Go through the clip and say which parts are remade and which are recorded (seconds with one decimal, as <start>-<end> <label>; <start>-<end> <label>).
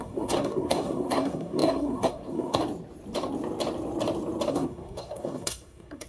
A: 0.0-2.6 remade; 2.6-4.5 recorded; 4.5-6.1 remade